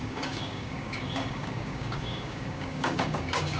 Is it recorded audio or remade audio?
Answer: remade